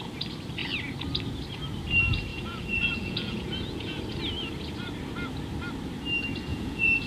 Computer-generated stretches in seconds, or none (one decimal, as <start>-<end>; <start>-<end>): 2.3-4.0; 6.5-7.1